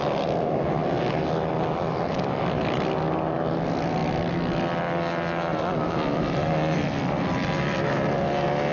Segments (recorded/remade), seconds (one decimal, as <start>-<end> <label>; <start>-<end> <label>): 0.0-8.7 recorded